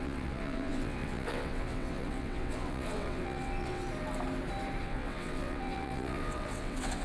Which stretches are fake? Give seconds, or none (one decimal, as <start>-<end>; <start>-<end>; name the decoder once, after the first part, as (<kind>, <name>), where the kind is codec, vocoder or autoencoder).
0.0-3.8 (vocoder, WaveNeXt); 4.8-7.0